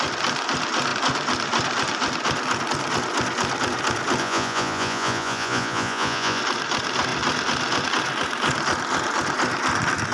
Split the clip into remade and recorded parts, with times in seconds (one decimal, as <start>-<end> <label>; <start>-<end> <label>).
0.0-4.2 recorded; 4.2-6.4 remade; 6.4-10.1 recorded